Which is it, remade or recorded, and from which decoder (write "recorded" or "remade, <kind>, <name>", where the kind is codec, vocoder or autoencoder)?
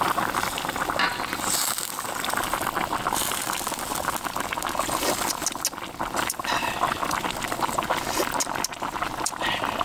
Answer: recorded